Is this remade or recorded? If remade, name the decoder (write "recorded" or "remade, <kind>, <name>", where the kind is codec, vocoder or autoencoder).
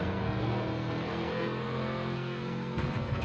remade, codec, SNAC